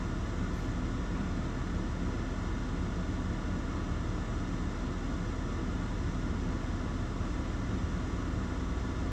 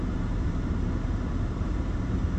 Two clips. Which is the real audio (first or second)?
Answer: first